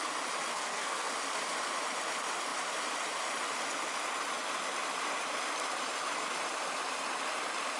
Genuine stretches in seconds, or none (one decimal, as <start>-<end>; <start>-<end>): 0.0-0.5; 1.1-7.8